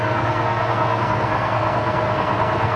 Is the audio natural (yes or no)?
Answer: no